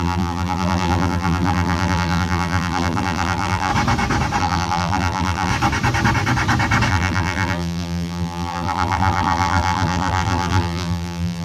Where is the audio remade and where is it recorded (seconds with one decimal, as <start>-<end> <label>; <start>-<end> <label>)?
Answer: 0.0-3.7 remade; 3.7-4.4 recorded; 4.4-5.5 remade; 5.5-6.9 recorded; 6.9-11.4 remade